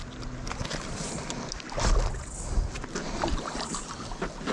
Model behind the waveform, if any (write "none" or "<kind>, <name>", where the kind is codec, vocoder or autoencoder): none